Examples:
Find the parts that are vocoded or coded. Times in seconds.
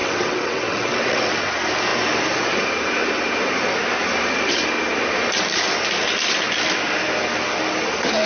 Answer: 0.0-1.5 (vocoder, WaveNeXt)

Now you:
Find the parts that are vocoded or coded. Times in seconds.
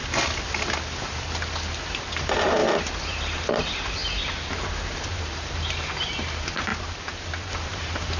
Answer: 1.8-4.0 (vocoder, BigVGAN v2); 5.2-6.7; 7.5-8.2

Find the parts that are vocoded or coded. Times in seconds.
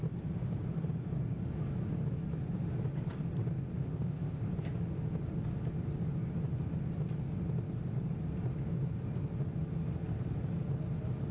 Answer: 3.8-4.4 (codec, ZipCodec)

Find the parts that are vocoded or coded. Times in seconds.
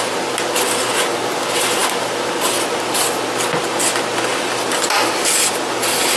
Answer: none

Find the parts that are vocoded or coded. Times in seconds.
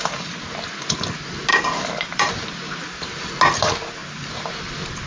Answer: 1.5-2.3 (vocoder, BigVGAN v2)